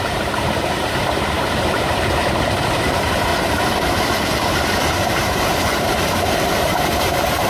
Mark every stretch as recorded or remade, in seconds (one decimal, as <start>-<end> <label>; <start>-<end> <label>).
0.0-3.3 remade; 3.3-4.3 recorded; 4.3-7.5 remade

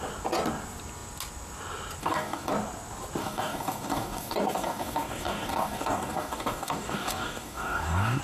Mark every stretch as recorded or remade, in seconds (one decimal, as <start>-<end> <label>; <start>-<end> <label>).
0.0-2.0 recorded; 2.0-2.5 remade; 2.5-3.2 recorded; 3.2-8.2 remade

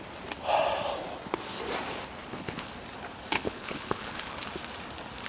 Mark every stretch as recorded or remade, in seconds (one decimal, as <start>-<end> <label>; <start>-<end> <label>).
0.0-2.2 recorded; 2.2-2.7 remade; 2.7-3.3 recorded; 3.3-4.5 remade; 4.5-5.3 recorded

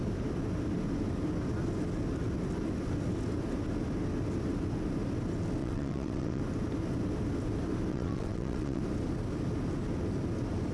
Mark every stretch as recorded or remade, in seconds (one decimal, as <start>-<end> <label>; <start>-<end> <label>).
0.0-5.6 recorded; 5.6-6.4 remade; 6.4-7.9 recorded; 7.9-8.8 remade; 8.8-10.7 recorded

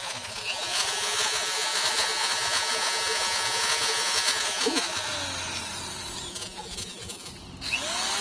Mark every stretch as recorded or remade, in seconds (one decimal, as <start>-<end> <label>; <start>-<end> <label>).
0.0-5.1 remade; 5.1-6.3 recorded; 6.3-7.3 remade; 7.3-8.2 recorded

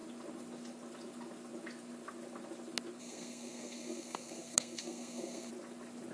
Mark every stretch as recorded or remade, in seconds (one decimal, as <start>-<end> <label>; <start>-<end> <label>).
0.0-3.0 recorded; 3.0-5.5 remade; 5.5-6.1 recorded

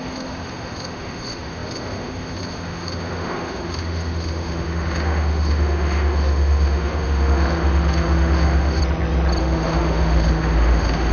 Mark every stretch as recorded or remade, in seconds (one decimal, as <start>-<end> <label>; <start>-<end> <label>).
0.0-8.8 remade; 8.8-9.4 recorded; 9.4-11.1 remade